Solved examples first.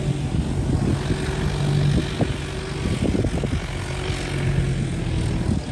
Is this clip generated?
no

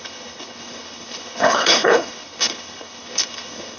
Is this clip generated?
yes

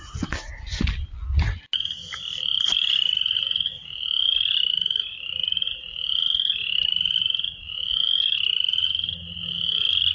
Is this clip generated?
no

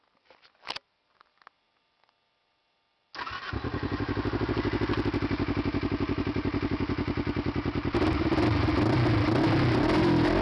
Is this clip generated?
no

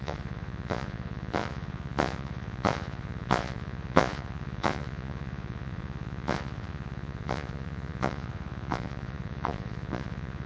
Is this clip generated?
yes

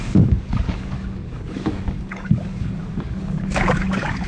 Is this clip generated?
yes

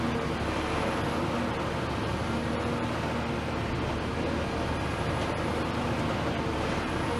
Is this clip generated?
no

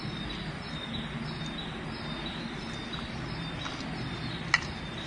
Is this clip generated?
no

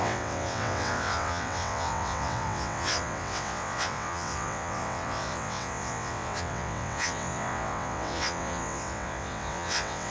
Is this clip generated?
yes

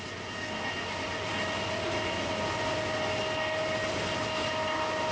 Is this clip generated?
no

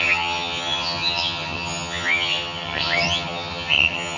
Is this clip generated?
yes